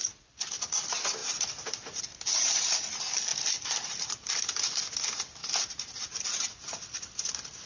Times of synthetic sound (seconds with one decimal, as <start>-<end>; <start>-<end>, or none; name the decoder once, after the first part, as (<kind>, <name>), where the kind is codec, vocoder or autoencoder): 1.2-2.0 (vocoder, BigVGAN v2); 3.3-4.6